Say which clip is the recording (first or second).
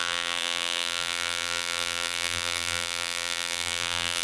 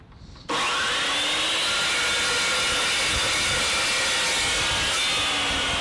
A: second